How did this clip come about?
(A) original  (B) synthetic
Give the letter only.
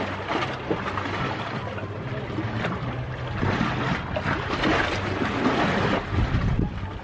A